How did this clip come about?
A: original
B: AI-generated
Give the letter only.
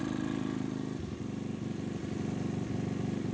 A